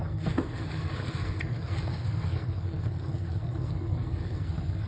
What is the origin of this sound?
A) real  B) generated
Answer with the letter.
B